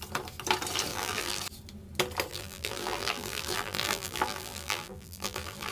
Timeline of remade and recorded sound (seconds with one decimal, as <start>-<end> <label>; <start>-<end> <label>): 0.0-0.9 recorded; 0.9-1.4 remade; 1.4-2.3 recorded; 2.3-5.7 remade